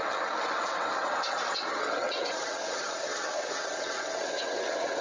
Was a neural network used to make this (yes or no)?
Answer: yes